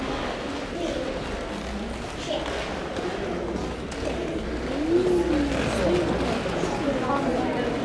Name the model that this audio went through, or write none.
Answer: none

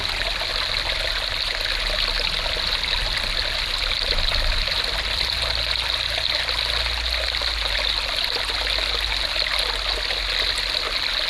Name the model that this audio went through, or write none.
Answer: none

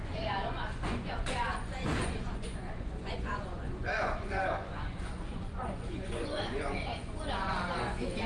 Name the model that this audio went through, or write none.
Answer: vocoder, Vocos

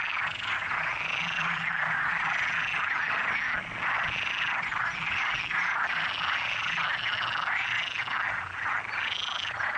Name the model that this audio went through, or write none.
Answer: none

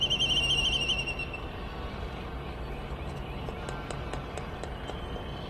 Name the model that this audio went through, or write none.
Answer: none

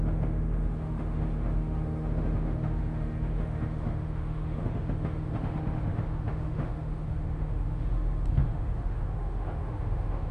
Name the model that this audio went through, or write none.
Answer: autoencoder, DAC-VAE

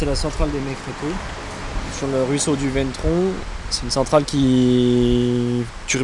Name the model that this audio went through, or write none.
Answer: none